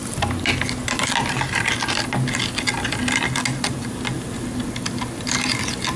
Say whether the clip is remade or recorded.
recorded